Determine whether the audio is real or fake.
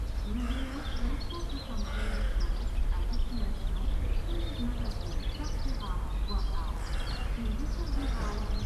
real